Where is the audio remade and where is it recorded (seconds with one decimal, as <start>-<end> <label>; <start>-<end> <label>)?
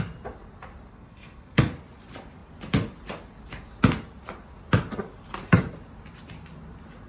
0.0-0.9 recorded; 0.9-1.7 remade; 1.7-7.1 recorded